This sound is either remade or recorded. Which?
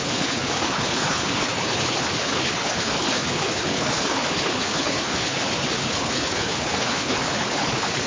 remade